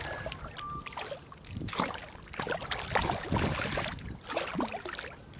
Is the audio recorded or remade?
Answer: recorded